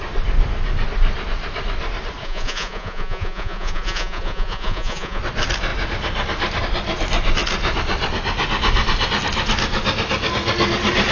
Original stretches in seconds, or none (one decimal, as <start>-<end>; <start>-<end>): 0.0-2.2; 5.2-11.1